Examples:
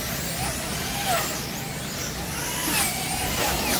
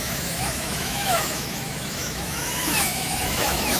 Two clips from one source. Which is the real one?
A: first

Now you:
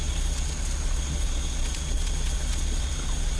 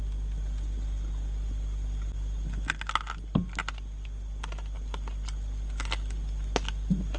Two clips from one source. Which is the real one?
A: second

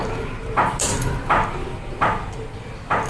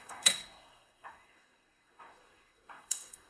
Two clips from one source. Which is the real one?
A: first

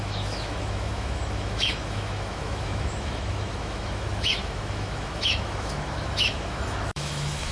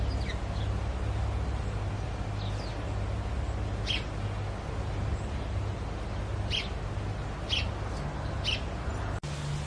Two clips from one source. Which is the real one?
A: second